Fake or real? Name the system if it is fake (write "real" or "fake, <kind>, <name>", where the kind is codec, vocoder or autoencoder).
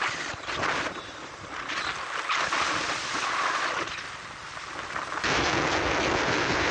real